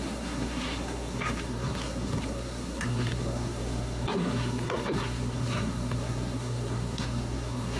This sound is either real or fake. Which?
fake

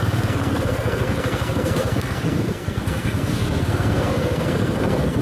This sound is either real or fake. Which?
fake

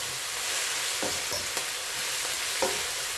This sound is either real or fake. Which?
real